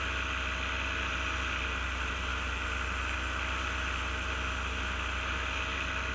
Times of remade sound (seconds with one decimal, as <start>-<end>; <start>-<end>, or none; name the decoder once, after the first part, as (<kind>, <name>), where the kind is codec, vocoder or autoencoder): none